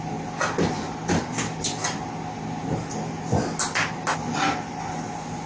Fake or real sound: real